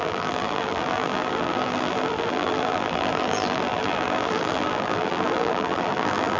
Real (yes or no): no